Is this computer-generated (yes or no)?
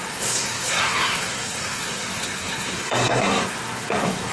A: yes